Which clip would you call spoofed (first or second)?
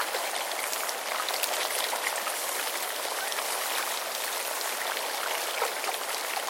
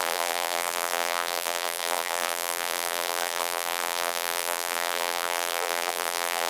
second